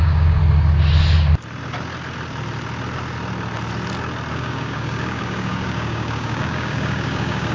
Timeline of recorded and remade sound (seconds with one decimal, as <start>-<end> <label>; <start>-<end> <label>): 0.0-0.4 remade; 0.4-4.3 recorded; 4.3-7.5 remade